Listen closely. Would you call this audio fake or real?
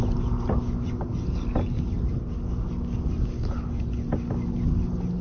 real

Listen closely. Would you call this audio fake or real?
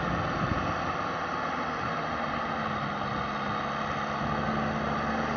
real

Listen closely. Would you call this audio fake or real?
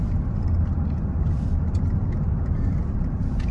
real